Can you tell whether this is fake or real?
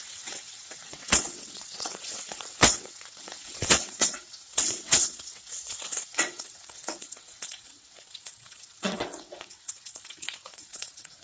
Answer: fake